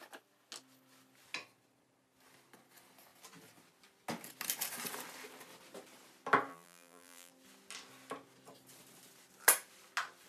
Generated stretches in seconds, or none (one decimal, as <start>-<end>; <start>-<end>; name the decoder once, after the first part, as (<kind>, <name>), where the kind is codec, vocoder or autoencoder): 6.5-7.3 (vocoder, BigVGAN v2)